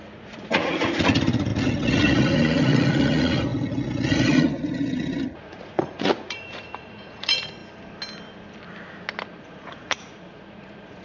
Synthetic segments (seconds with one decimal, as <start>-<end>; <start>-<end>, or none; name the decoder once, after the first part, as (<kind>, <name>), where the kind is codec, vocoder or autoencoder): 0.0-7.6 (vocoder, Vocos); 9.4-11.0